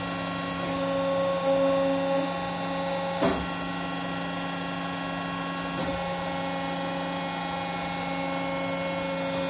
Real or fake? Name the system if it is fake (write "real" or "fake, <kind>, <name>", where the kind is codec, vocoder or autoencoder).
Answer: real